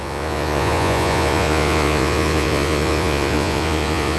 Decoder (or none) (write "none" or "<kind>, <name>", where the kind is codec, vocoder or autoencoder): vocoder, Vocos